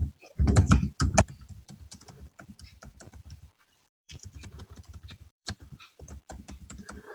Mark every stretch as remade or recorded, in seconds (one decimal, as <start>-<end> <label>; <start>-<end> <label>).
0.0-1.5 recorded; 1.5-7.1 remade

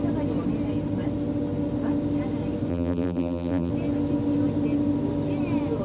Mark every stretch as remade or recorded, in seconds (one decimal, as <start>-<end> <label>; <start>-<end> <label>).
0.0-2.7 recorded; 2.7-3.7 remade; 3.7-5.8 recorded

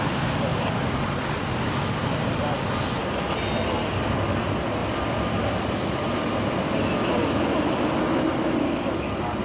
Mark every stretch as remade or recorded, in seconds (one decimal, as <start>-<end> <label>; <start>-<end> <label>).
0.0-0.5 recorded; 0.5-1.7 remade; 1.7-4.8 recorded; 4.8-6.7 remade; 6.7-9.4 recorded

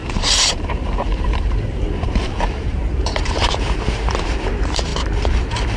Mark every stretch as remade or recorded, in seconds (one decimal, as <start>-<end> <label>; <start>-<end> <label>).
0.0-4.9 remade; 4.9-5.8 recorded

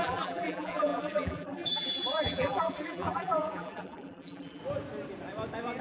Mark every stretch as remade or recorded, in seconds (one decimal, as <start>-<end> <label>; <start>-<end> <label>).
0.0-4.6 remade; 4.6-5.8 recorded